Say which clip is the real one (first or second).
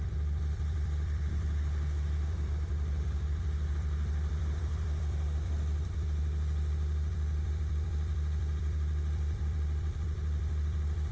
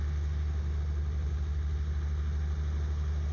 second